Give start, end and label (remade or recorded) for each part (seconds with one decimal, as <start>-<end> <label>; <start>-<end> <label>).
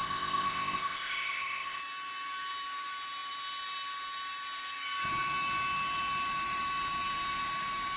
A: 0.0-1.8 remade; 1.8-8.0 recorded